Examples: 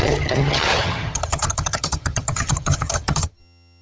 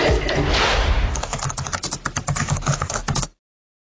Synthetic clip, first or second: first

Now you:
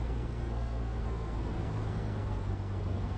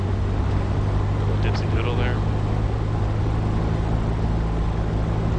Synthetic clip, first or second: first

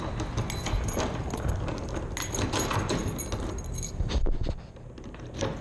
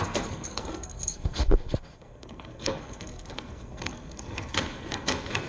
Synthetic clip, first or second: second